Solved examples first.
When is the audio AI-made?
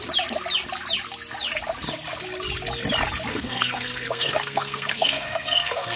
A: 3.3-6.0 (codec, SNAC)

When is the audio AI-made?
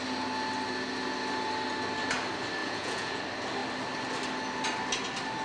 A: 2.6-3.2 (vocoder, Vocos)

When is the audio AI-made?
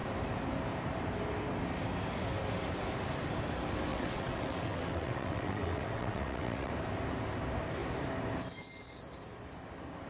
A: 3.9-6.7 (vocoder, WaveNeXt)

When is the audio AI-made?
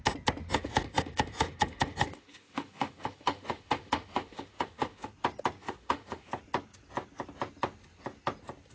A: 0.5-5.1 (autoencoder, DAC-VAE); 5.6-6.3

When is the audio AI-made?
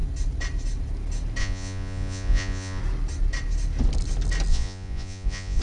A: 1.4-2.8 (vocoder, Vocos); 4.5-5.6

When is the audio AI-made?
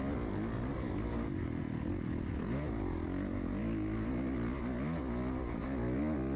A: 3.6-4.1 (autoencoder, DAC-VAE)